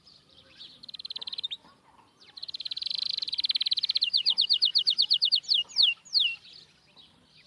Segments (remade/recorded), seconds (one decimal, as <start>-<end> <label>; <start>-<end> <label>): 0.0-3.3 remade; 3.3-7.5 recorded